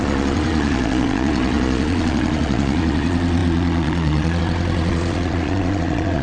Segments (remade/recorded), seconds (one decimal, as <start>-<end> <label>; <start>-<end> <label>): 0.0-6.2 remade